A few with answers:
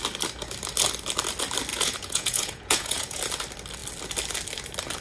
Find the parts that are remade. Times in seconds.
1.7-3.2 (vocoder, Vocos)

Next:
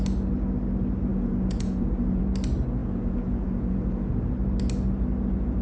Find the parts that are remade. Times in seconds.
1.1-2.2 (vocoder, Vocos); 2.8-4.1